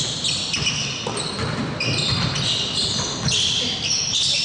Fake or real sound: real